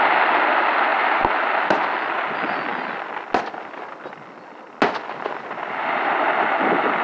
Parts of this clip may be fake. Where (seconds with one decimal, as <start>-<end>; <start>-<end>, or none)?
0.9-1.4